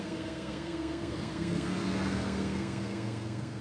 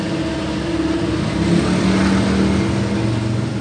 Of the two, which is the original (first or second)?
second